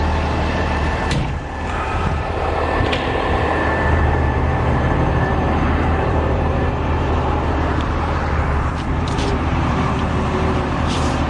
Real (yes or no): no